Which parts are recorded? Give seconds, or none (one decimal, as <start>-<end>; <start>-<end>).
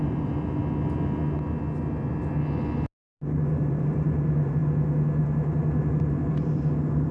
0.6-3.7; 4.6-5.9